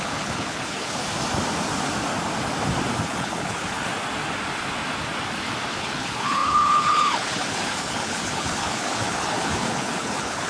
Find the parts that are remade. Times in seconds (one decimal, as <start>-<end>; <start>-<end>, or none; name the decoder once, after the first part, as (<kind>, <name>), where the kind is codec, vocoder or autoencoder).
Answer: 0.0-1.0 (codec, HILCodec); 2.9-3.9; 5.7-10.5